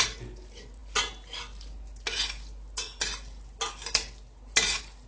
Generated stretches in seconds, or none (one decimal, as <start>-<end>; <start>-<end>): none